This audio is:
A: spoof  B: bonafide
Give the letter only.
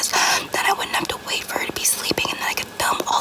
B